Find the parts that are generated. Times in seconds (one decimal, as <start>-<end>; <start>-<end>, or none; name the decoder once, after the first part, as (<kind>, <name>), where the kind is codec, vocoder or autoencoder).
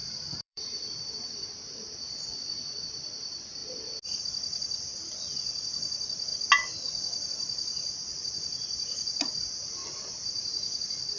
0.0-1.5 (vocoder, BigVGAN v2); 9.8-11.2